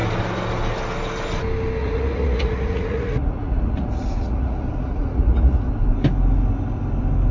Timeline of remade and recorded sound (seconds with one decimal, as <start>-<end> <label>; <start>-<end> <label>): 0.0-1.8 recorded; 1.8-5.7 remade; 5.7-7.3 recorded